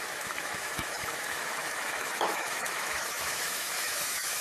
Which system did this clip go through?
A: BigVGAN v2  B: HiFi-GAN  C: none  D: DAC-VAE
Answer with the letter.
D